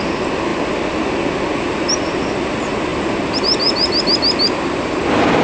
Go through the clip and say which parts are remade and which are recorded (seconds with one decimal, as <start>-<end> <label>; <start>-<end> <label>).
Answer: 0.0-2.9 recorded; 2.9-4.0 remade; 4.0-5.4 recorded